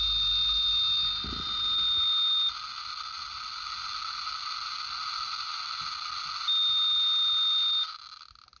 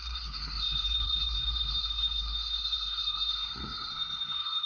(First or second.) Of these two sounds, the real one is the first